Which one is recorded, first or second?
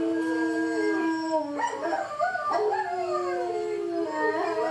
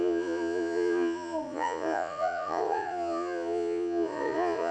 first